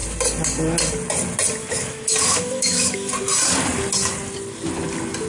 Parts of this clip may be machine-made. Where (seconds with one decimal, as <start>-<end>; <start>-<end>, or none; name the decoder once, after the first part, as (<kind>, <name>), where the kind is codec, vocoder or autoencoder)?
1.6-3.1 (autoencoder, DAC-VAE)